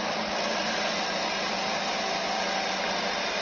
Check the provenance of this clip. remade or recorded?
recorded